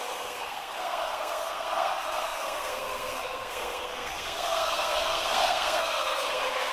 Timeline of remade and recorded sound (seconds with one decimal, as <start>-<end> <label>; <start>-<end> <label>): 0.0-6.7 remade